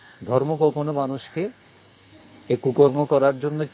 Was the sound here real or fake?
fake